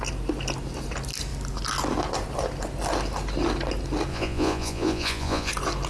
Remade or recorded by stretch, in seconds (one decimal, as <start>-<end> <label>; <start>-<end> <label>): 0.0-4.1 recorded; 4.1-5.5 remade; 5.5-5.9 recorded

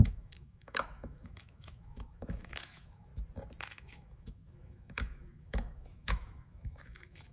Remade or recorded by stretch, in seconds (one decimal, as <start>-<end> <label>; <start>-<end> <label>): 0.0-3.1 remade; 3.1-3.6 recorded; 3.6-7.3 remade